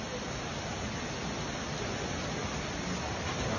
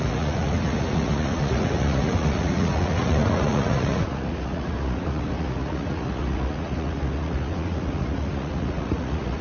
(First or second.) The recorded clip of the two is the first